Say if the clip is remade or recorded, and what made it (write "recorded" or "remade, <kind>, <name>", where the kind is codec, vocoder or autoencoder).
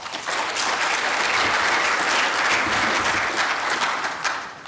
recorded